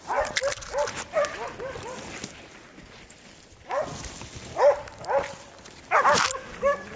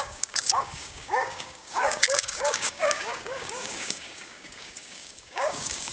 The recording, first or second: first